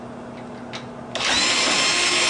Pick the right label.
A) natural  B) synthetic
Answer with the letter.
A